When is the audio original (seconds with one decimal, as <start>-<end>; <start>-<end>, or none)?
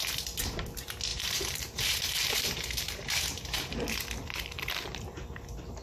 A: 0.0-1.1; 4.0-5.8